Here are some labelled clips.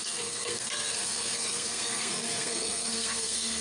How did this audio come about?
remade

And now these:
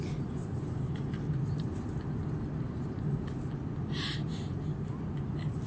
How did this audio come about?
recorded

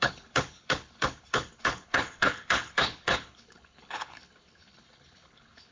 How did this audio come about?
remade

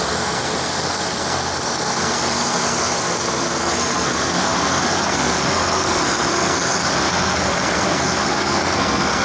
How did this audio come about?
remade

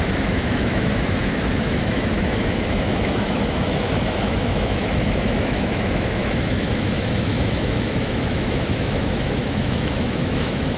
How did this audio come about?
remade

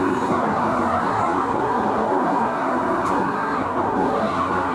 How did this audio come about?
remade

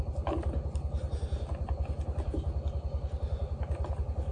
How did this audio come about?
recorded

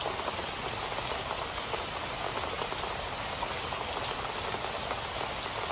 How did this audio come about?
recorded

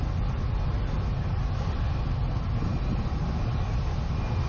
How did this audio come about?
recorded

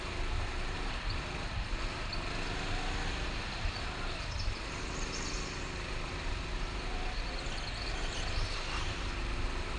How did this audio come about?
recorded